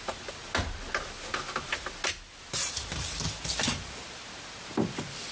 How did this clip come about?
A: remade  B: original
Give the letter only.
B